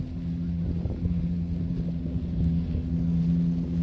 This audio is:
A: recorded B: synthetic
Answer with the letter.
A